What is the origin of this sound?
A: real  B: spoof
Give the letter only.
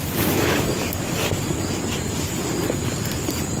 A